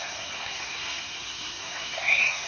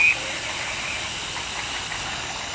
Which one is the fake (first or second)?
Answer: first